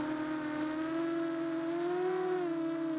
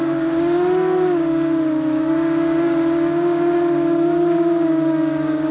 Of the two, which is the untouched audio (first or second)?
first